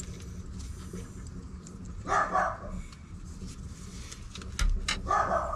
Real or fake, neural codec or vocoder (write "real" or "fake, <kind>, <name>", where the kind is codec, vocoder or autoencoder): real